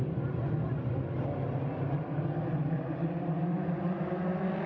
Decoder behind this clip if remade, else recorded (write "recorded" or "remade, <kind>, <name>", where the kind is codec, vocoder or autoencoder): recorded